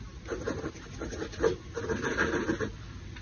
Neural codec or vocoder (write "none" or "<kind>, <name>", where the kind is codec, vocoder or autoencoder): none